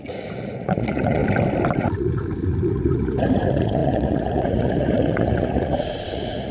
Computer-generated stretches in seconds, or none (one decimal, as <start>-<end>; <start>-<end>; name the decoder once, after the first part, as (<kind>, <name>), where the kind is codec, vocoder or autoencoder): 0.0-1.2 (vocoder, Vocos); 1.8-6.5